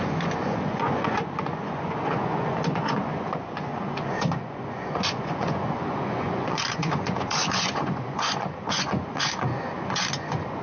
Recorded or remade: remade